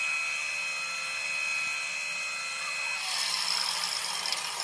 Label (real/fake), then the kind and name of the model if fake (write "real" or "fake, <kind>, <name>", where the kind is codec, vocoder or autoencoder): real